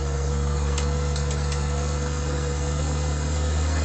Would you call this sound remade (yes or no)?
yes